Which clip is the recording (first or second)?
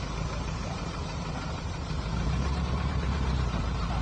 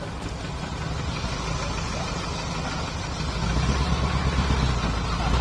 second